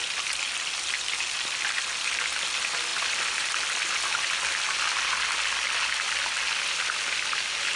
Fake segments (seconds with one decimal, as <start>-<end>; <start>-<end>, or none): none